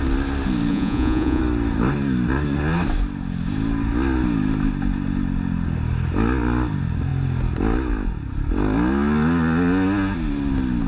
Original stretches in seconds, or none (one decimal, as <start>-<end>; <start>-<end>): 0.0-0.7; 1.4-10.9